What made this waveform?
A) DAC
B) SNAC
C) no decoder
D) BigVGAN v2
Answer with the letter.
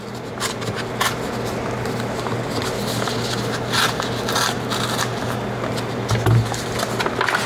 C